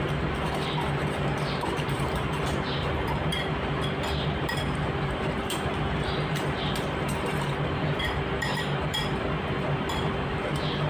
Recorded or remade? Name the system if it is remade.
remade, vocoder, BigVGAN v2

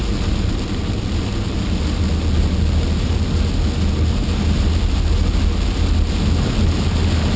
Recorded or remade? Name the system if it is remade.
recorded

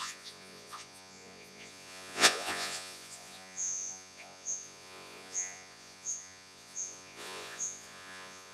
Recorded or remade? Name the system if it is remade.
remade, vocoder, Vocos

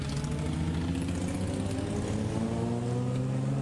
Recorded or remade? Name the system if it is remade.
recorded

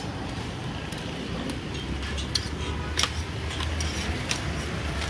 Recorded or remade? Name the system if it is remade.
recorded